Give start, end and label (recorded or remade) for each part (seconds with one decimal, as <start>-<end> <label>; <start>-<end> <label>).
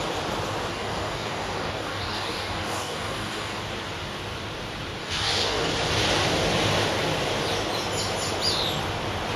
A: 0.0-0.7 recorded; 0.7-3.6 remade; 3.6-5.0 recorded; 5.0-5.7 remade; 5.7-9.4 recorded